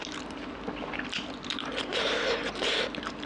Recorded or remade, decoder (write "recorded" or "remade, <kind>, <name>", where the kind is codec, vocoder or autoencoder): recorded